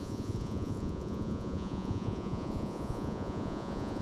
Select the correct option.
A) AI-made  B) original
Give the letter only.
A